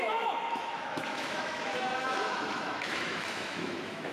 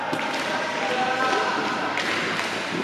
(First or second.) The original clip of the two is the second